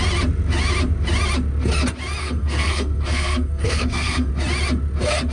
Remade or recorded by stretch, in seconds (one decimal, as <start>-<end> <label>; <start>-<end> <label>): 0.0-2.2 recorded; 2.2-4.3 remade; 4.3-5.3 recorded